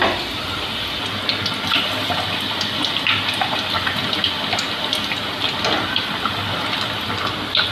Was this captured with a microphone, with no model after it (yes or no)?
yes